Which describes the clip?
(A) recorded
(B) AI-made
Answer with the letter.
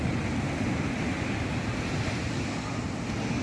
A